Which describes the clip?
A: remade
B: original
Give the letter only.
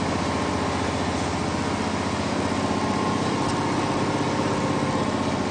B